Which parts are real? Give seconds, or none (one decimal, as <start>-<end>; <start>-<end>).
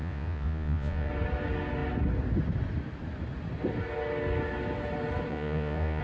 1.1-5.3